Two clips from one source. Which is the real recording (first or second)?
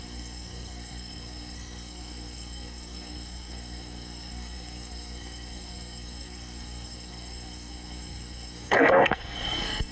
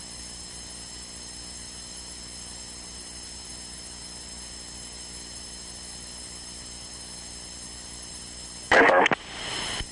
second